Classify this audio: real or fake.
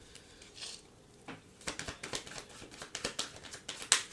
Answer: real